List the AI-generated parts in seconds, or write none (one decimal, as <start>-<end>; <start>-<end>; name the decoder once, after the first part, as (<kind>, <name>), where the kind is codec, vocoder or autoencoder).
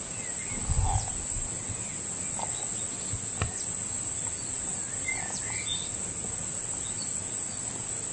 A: none